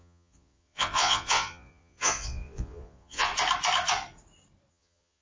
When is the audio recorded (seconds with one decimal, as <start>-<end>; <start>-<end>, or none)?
3.3-4.7